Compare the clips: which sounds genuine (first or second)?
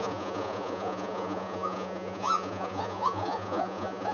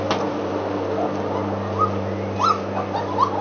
second